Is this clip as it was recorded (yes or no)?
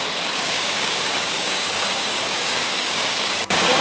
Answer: no